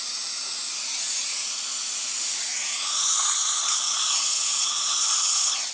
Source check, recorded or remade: remade